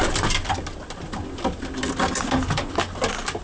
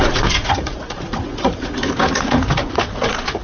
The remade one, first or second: second